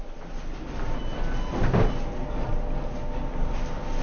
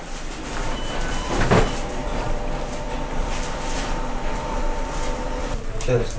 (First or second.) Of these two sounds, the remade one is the second